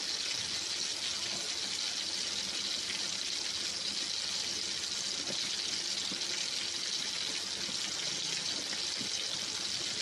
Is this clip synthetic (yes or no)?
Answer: no